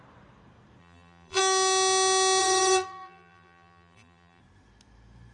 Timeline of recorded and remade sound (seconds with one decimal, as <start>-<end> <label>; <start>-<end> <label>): 0.0-0.8 recorded; 0.8-1.4 remade; 1.4-2.4 recorded; 2.4-4.4 remade; 4.4-5.3 recorded